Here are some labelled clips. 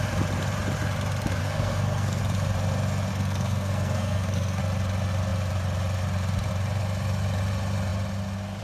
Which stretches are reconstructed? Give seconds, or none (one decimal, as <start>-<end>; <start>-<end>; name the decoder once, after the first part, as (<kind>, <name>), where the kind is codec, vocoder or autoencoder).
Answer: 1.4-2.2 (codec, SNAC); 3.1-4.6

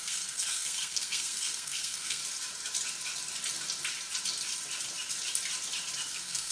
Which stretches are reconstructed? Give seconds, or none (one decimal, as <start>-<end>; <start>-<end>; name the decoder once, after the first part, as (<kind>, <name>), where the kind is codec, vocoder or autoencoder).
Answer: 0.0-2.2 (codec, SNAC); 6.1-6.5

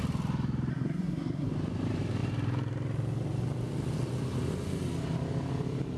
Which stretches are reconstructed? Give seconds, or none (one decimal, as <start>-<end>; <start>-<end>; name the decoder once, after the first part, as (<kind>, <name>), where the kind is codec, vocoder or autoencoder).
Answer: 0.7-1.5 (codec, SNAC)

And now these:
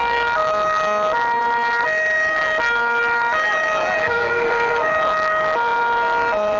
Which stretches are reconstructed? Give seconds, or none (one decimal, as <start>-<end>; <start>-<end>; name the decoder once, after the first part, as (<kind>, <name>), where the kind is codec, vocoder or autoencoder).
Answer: 4.0-4.9 (codec, SNAC)

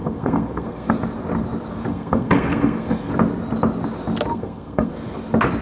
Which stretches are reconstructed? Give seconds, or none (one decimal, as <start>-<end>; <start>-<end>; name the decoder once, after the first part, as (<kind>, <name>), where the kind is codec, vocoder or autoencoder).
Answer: 0.0-0.9 (codec, SNAC); 1.9-3.1; 4.3-4.9

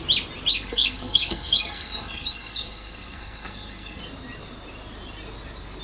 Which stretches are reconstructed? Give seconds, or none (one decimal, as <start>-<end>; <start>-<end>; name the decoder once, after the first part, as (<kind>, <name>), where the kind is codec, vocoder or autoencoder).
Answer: 0.5-4.0 (codec, SNAC)

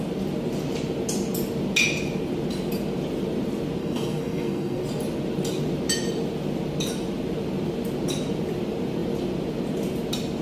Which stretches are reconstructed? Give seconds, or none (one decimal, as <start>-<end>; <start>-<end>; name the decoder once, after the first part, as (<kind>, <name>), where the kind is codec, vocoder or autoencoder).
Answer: 3.8-4.8 (codec, SNAC)